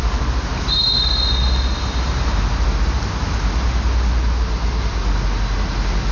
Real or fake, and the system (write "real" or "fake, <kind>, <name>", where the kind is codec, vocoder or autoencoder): real